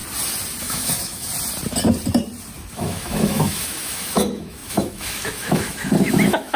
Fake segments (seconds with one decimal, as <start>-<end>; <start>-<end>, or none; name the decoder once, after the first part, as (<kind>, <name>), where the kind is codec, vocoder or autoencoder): 0.6-1.3 (autoencoder, DAC-VAE); 2.7-6.6

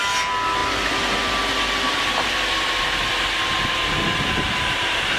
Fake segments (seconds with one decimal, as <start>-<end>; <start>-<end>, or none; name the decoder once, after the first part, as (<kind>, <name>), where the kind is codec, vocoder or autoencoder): none

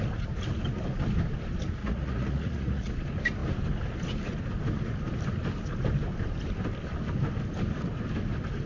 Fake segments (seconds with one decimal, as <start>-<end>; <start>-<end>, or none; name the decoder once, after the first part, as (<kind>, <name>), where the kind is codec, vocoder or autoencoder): 1.8-2.9 (vocoder, Vocos)

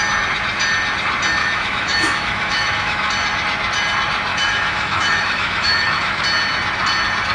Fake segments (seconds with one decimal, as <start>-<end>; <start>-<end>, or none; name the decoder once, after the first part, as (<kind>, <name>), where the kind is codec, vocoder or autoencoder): 1.4-3.1 (autoencoder, DAC-VAE); 4.3-6.2

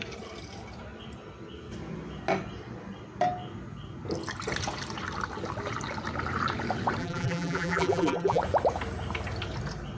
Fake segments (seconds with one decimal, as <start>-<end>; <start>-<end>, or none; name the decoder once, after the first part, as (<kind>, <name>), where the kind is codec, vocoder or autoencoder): 7.0-8.4 (vocoder, BigVGAN v2)